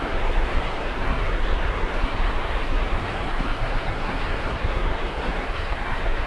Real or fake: fake